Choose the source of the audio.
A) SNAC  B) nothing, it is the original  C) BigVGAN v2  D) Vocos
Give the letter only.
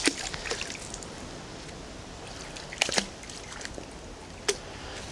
B